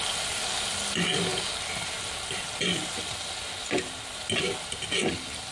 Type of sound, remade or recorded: recorded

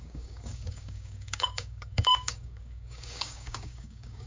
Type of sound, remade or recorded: remade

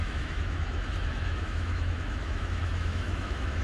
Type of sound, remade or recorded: remade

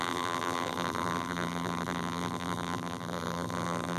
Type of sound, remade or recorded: remade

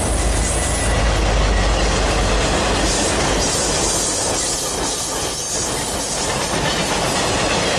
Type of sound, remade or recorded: recorded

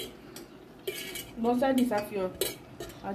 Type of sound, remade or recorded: recorded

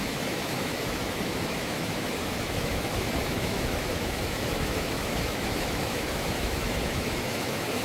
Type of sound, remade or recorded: remade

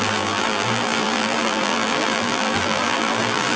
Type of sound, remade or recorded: remade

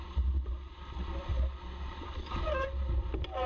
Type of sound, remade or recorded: recorded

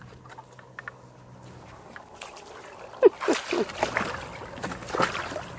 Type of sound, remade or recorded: recorded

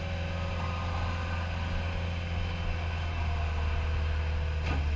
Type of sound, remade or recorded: recorded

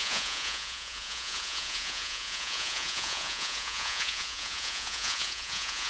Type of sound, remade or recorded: remade